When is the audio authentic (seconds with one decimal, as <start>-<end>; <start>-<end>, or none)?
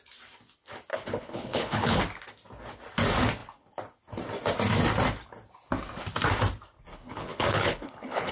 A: 0.0-0.9; 2.0-6.9